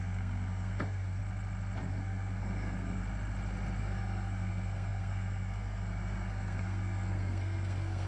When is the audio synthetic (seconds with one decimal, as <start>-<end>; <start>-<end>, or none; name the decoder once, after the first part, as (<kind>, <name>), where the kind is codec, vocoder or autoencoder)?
0.0-1.2 (codec, SNAC); 1.9-3.0; 3.8-8.1